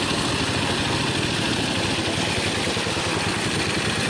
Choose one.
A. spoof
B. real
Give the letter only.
B